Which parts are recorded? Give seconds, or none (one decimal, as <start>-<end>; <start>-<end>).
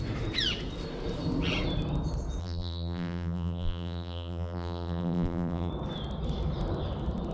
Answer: 0.0-2.4; 5.7-7.3